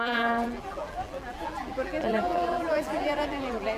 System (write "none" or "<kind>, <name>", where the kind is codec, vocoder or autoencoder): vocoder, BigVGAN v2